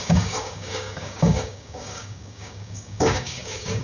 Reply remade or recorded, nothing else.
remade